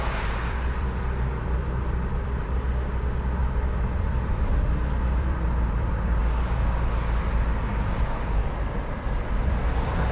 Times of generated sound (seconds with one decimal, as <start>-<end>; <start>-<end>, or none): 0.0-3.4; 4.9-6.2; 7.7-10.1